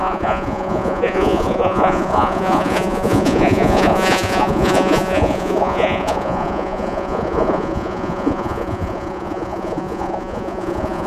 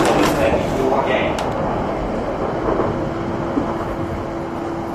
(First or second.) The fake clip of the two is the first